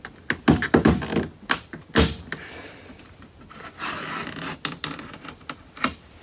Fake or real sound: real